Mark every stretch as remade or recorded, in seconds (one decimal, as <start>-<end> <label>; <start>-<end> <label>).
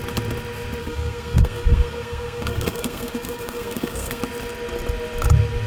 0.0-0.8 recorded; 0.8-4.2 remade; 4.2-5.7 recorded